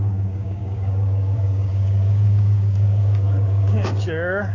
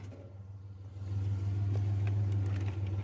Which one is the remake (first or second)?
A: first